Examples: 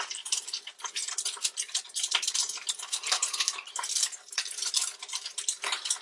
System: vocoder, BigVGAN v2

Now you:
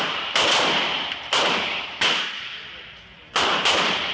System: vocoder, BigVGAN v2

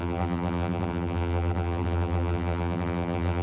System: vocoder, BigVGAN v2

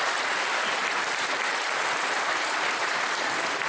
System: vocoder, BigVGAN v2